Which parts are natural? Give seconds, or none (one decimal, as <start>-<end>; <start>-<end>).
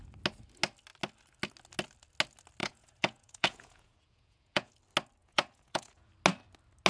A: 0.0-2.6; 4.7-5.2; 6.1-6.9